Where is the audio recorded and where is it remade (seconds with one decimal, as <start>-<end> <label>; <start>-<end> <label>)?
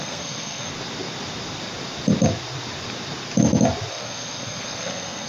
0.0-0.7 remade; 0.7-3.9 recorded; 3.9-5.3 remade